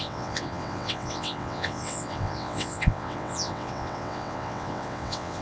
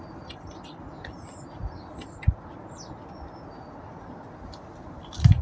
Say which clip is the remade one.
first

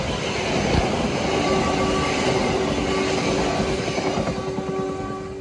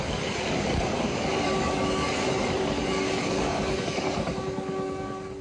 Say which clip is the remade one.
second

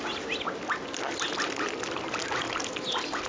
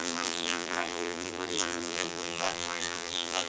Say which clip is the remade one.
second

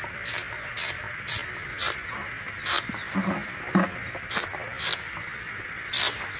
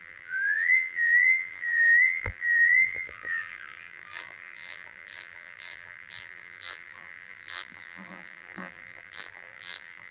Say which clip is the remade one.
second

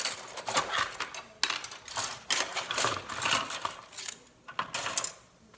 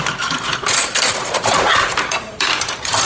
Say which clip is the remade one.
second